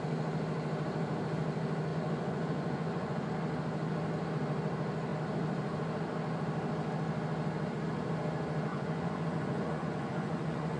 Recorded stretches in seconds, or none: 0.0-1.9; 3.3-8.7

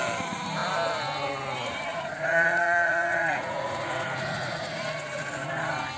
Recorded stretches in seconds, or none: 0.0-1.9; 5.5-6.0

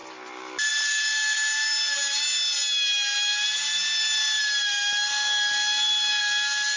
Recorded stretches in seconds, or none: 0.0-6.8